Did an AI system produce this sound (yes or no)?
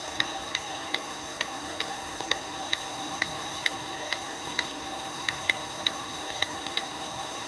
yes